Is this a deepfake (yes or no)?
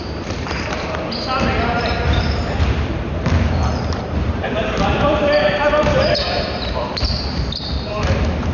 yes